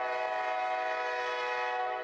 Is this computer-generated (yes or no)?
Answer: no